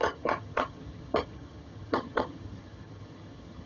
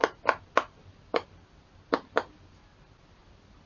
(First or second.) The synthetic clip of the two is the first